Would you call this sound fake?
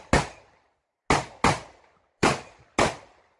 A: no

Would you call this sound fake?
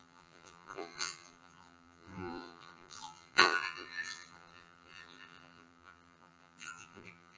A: yes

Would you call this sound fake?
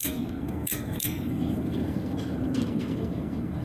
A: yes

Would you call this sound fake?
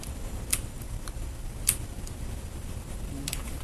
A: yes